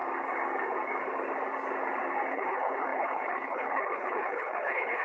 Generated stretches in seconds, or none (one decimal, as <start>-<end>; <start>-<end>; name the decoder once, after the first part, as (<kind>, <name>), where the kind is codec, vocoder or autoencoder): 2.3-5.0 (codec, HILCodec)